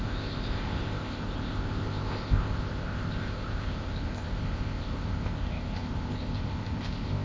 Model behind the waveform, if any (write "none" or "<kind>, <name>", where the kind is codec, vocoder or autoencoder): codec, ZipCodec